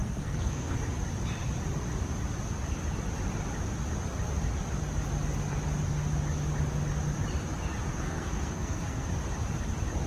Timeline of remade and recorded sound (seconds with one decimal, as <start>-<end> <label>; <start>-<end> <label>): 0.0-0.8 remade; 0.8-7.9 recorded; 7.9-9.1 remade; 9.1-10.1 recorded